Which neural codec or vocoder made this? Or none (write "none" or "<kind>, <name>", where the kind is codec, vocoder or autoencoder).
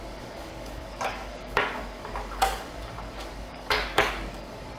codec, DAC